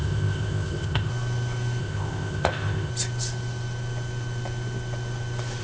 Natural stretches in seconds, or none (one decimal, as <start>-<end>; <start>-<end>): 1.1-1.8; 2.9-5.6